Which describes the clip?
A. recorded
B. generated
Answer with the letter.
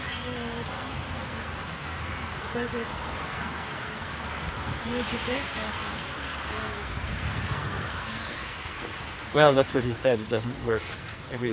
B